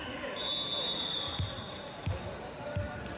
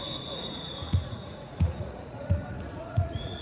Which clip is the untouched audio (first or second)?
first